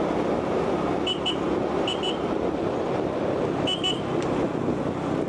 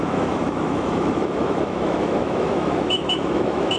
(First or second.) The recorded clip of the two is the first